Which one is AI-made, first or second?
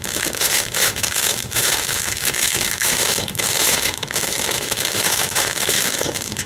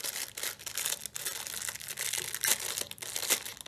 first